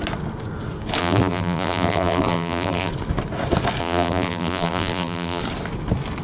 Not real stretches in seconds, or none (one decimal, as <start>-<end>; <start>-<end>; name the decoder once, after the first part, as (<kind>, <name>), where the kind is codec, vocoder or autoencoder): 1.0-2.9 (vocoder, BigVGAN v2); 3.8-5.4